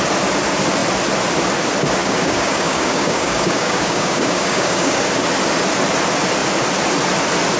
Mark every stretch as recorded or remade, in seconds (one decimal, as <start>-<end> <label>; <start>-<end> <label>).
0.0-2.0 recorded; 2.0-5.1 remade; 5.1-7.6 recorded